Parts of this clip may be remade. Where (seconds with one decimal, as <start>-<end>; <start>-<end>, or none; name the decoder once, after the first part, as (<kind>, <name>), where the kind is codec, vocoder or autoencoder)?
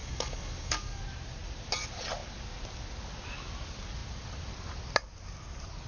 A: 0.0-1.0 (codec, DAC)